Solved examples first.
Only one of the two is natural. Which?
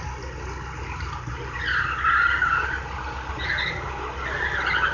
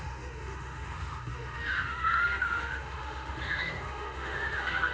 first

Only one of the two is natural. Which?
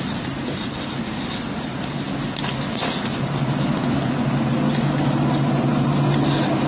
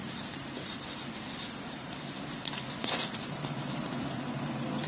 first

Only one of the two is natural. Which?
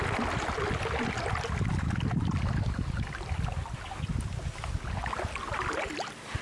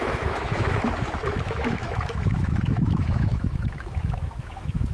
first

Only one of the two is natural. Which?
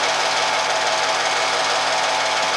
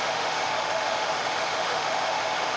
first